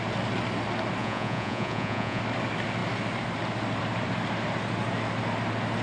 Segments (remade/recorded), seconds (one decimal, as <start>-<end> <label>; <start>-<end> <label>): 0.0-1.0 recorded; 1.0-2.2 remade; 2.2-5.8 recorded